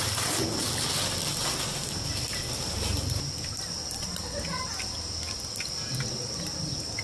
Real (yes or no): yes